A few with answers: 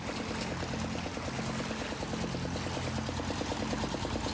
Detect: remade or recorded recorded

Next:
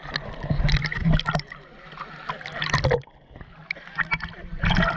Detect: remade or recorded recorded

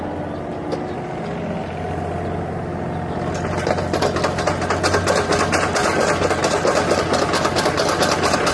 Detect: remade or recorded recorded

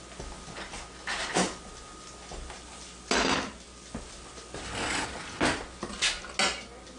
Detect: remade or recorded recorded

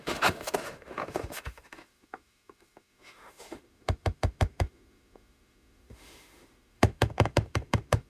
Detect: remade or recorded remade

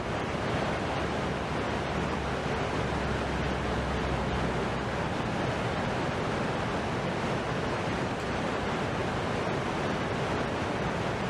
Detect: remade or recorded recorded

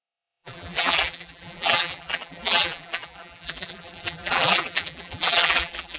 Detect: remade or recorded remade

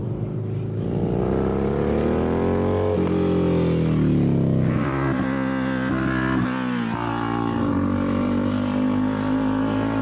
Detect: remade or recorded recorded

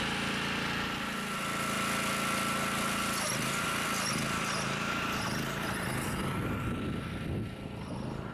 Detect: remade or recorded recorded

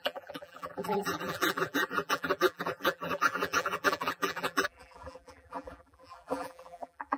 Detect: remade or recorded remade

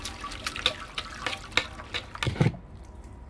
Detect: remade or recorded recorded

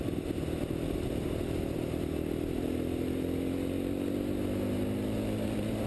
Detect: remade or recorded recorded